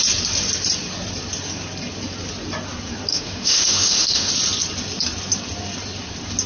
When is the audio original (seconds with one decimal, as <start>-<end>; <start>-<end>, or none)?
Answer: 0.0-3.1; 4.3-6.5